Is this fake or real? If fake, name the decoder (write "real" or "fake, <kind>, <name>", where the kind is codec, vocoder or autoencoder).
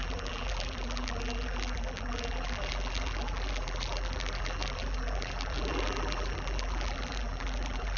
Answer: fake, vocoder, BigVGAN v2